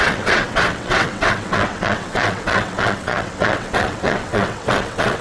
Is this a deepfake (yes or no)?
yes